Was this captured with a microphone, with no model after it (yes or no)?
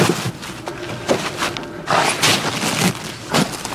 yes